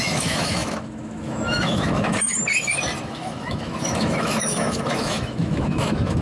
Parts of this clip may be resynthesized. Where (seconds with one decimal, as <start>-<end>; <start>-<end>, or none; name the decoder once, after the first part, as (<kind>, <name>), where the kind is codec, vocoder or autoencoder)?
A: 0.0-2.4 (autoencoder, DAC-VAE); 3.0-6.2